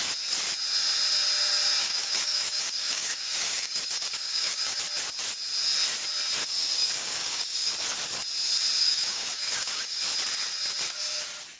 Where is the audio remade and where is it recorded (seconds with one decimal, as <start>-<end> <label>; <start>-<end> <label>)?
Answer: 0.0-1.8 recorded; 1.8-4.8 remade; 4.8-6.4 recorded; 6.4-7.7 remade; 7.7-8.8 recorded; 8.8-10.0 remade; 10.0-11.6 recorded